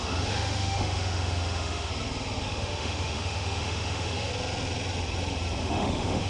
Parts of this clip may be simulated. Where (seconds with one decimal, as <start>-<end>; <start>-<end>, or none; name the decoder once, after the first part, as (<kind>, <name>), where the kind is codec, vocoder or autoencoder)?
0.0-1.9 (autoencoder, DAC-VAE); 2.4-4.3; 5.6-6.3